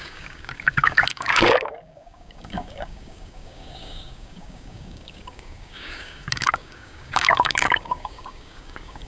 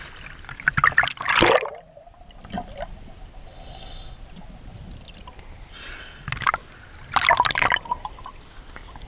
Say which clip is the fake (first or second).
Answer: first